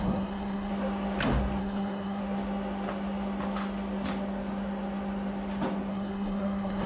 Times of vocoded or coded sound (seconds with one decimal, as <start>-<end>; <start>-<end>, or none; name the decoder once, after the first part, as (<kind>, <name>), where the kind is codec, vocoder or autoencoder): 0.0-0.7 (codec, SNAC); 1.6-2.2; 5.9-6.9